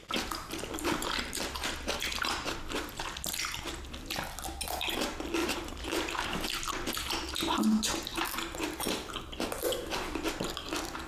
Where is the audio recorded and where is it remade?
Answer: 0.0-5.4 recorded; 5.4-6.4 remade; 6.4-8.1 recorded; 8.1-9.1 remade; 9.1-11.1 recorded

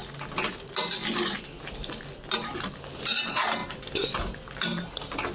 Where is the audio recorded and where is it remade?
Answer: 0.0-3.6 recorded; 3.6-4.2 remade; 4.2-4.7 recorded; 4.7-5.3 remade